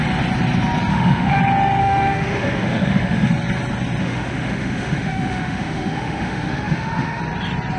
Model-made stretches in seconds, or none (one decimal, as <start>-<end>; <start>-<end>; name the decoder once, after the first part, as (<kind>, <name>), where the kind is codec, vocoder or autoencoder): 0.9-1.4 (autoencoder, DAC-VAE); 1.8-3.3; 4.0-7.2